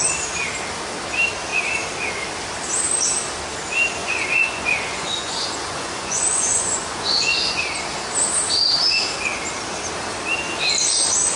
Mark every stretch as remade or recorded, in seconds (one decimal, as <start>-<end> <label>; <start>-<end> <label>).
0.0-4.0 recorded; 4.0-7.6 remade; 7.6-11.4 recorded